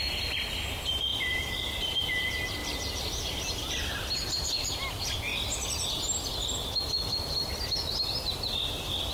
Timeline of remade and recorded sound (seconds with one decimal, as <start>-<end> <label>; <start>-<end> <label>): 0.0-1.1 recorded; 1.1-2.0 remade; 2.0-2.6 recorded; 2.6-3.9 remade; 3.9-5.3 recorded; 5.3-5.9 remade; 5.9-9.1 recorded